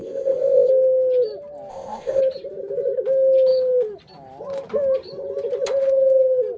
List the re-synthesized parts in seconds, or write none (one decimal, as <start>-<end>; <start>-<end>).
0.0-0.7; 1.7-2.2